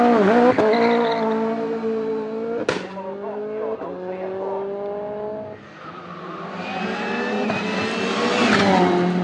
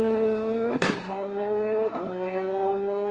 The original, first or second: first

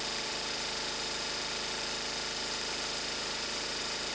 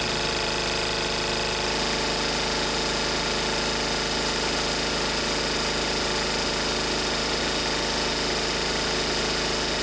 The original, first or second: second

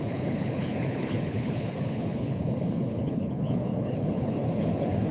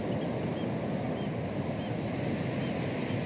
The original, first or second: second